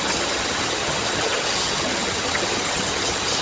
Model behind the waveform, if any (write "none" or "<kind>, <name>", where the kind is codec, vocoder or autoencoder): vocoder, HiFi-GAN